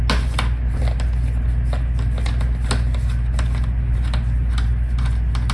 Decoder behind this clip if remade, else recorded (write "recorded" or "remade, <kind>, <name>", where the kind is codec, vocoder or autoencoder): recorded